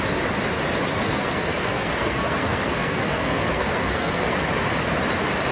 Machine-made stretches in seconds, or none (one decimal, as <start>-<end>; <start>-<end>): 1.1-4.4